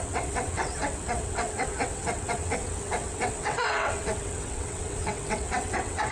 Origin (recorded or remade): remade